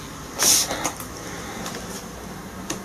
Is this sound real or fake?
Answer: real